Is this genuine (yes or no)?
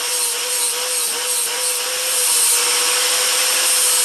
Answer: yes